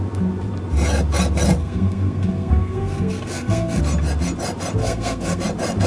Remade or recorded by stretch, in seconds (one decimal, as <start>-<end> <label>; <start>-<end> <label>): 0.0-1.6 recorded; 1.6-3.8 remade; 3.8-4.8 recorded; 4.8-5.4 remade; 5.4-5.9 recorded